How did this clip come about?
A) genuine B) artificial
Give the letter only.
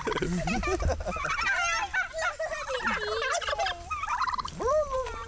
A